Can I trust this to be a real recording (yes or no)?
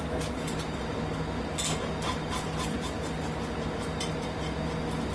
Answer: yes